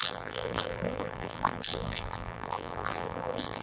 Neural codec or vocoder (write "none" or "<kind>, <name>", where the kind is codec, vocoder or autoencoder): vocoder, BigVGAN v2